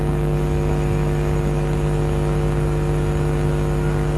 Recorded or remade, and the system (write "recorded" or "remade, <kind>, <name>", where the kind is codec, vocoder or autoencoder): recorded